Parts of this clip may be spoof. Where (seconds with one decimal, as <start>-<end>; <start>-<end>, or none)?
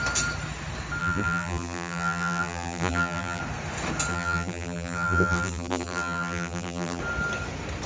1.0-3.4; 4.1-7.0